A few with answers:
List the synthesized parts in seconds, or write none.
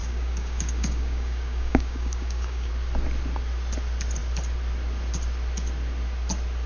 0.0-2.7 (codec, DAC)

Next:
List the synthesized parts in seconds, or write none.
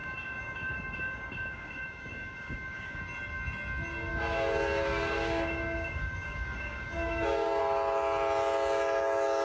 0.0-3.0 (codec, DAC); 4.1-7.6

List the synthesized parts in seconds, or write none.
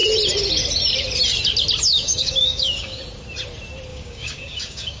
1.9-3.0 (codec, DAC); 3.9-5.0